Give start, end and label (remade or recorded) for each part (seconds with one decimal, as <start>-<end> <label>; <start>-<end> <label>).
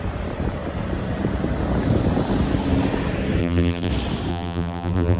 0.0-3.4 recorded; 3.4-3.9 remade; 3.9-4.3 recorded; 4.3-5.2 remade